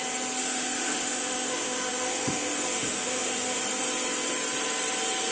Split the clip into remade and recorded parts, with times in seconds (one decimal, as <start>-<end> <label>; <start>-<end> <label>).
0.0-0.4 recorded; 0.4-3.6 remade; 3.6-5.3 recorded